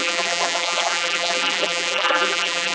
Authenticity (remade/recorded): remade